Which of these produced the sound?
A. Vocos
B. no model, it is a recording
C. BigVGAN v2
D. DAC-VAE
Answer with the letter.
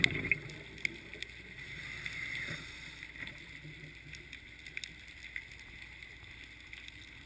B